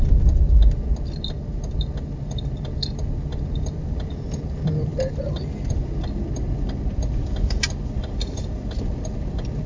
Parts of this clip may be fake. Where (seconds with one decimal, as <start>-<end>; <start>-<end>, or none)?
none